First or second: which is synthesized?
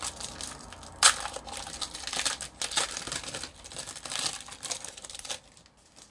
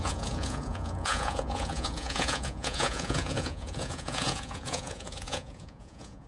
second